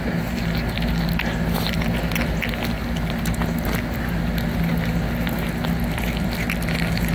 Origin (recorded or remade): recorded